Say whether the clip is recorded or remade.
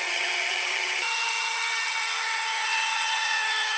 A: remade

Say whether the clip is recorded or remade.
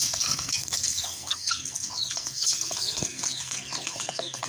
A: remade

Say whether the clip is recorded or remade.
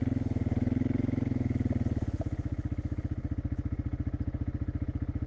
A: recorded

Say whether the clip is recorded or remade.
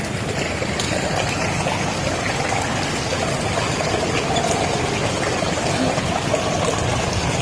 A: recorded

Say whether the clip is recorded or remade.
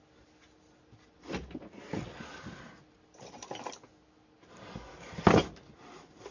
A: recorded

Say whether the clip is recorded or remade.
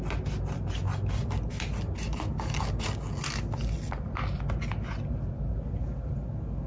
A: recorded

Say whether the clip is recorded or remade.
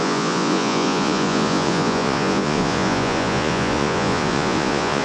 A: remade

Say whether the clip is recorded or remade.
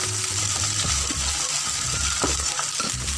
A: recorded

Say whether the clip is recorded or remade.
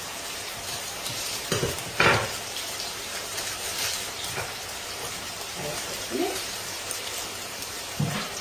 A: remade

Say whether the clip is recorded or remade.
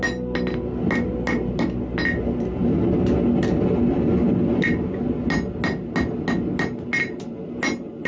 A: recorded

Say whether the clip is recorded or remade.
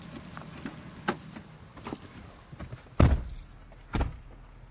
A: recorded